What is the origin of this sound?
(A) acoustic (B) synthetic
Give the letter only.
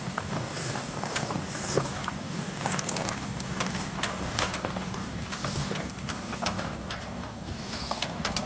B